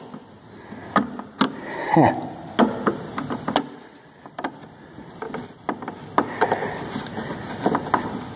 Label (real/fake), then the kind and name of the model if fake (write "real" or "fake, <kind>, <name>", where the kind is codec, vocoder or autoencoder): real